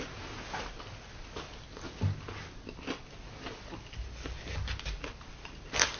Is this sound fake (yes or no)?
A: no